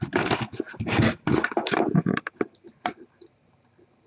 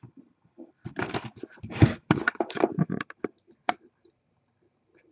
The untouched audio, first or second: first